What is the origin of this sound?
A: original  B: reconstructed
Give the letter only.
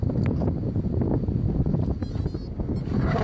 A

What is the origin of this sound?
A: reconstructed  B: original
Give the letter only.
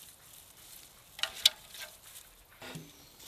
B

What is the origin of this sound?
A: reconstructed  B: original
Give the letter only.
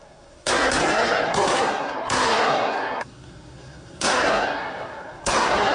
A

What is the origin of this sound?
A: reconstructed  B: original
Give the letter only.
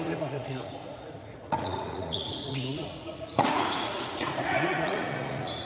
A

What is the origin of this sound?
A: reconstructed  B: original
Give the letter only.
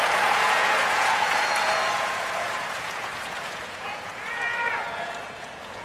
A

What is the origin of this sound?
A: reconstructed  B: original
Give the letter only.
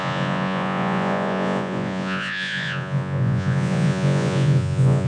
A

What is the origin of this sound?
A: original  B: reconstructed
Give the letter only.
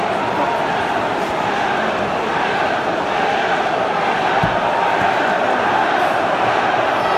A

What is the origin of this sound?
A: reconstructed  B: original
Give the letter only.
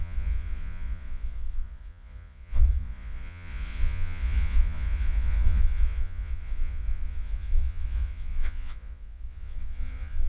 A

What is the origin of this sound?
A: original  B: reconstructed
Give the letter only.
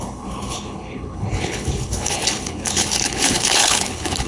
B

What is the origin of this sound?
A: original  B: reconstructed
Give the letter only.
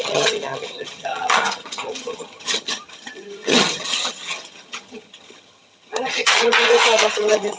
B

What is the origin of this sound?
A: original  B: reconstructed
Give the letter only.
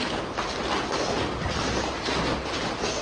A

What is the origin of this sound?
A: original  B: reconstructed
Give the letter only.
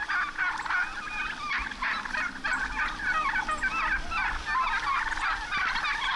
A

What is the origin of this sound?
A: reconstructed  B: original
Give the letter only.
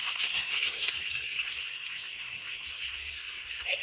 A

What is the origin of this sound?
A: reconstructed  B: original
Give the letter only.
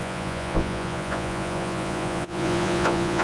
A